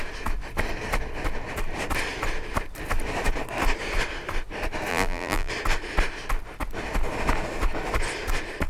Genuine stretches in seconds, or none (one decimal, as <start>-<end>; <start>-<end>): 0.0-4.9; 5.5-8.7